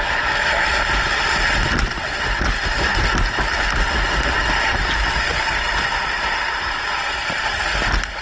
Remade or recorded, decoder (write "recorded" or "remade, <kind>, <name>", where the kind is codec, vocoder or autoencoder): recorded